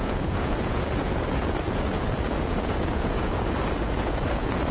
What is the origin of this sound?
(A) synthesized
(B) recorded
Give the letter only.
A